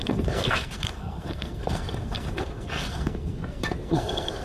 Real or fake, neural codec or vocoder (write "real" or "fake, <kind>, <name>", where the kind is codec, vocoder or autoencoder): fake, codec, SNAC